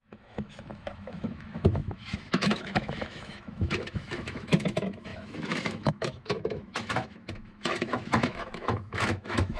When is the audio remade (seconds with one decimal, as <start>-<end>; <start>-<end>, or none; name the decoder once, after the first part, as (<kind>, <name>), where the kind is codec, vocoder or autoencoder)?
0.0-9.6 (autoencoder, DAC-VAE)